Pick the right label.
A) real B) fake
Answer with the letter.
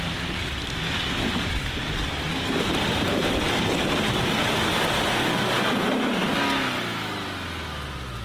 A